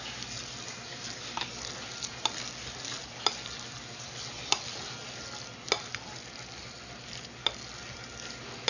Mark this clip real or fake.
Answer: real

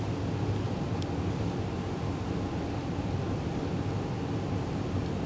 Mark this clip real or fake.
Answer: real